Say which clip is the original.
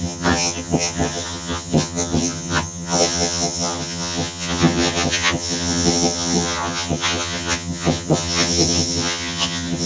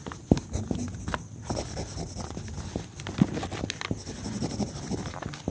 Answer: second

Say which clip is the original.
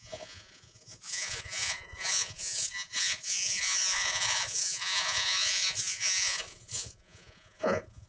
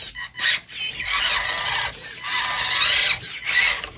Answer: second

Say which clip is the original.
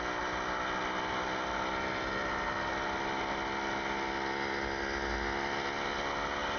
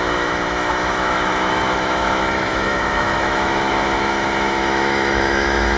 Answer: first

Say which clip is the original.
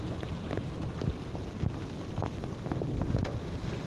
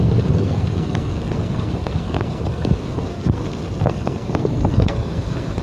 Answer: first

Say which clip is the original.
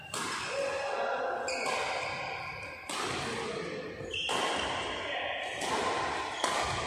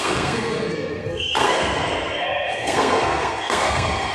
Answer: first